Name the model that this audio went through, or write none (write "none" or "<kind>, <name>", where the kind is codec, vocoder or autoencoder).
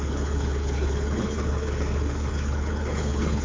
codec, HILCodec